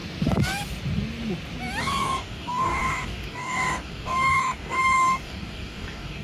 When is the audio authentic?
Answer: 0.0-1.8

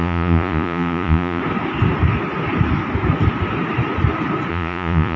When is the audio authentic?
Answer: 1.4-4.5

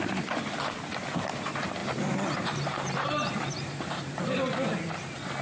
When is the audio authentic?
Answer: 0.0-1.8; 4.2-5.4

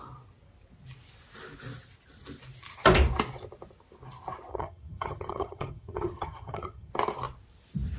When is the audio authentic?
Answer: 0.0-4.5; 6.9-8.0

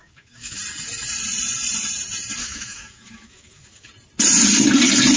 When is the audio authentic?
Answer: 0.6-2.4; 3.9-5.2

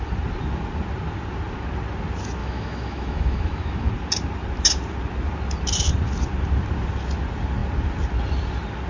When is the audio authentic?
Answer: 0.0-2.4; 3.9-8.9

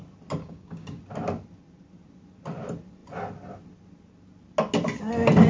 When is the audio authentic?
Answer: 0.0-0.4; 1.0-5.5

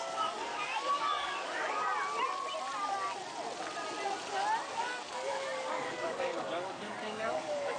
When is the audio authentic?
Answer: 1.9-4.8